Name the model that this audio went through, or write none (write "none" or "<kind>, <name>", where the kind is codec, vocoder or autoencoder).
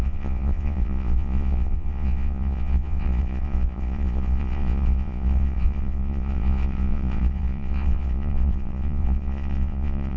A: vocoder, Vocos